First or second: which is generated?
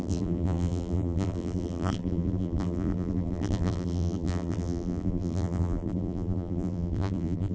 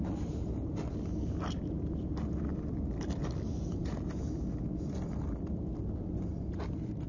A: first